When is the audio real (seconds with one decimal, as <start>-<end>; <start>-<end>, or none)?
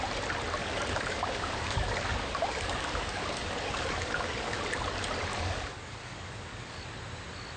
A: 0.0-0.6; 4.6-5.3; 6.8-7.6